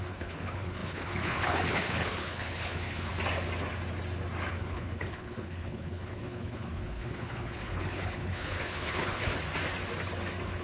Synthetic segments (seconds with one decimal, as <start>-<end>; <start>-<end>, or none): 0.0-3.1; 4.5-9.3